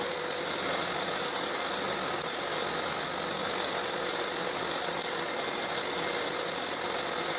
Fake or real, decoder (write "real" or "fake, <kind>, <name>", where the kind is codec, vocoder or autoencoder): real